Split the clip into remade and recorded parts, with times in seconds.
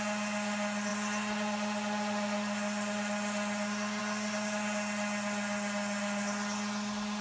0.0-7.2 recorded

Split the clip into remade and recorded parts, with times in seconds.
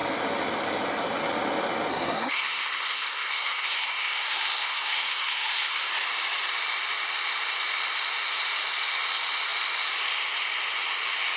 0.0-1.9 recorded; 1.9-5.9 remade; 5.9-11.4 recorded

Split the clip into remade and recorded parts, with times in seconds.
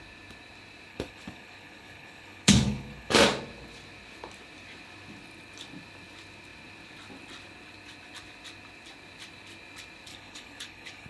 0.0-0.9 recorded; 0.9-3.2 remade; 3.2-10.1 recorded; 10.1-11.1 remade